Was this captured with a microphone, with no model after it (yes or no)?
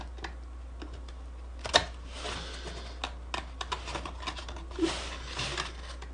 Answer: yes